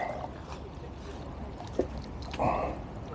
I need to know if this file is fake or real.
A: real